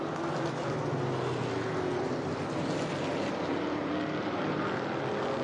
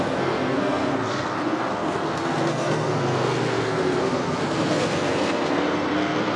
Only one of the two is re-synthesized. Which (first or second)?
second